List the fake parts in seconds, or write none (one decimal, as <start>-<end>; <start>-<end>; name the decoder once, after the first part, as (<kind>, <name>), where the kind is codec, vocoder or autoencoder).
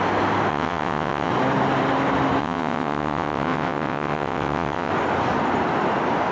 0.5-1.3 (vocoder, WaveNeXt); 2.4-4.9